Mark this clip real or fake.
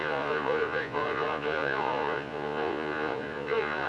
fake